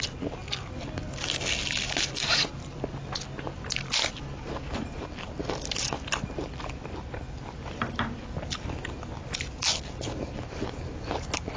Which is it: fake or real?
real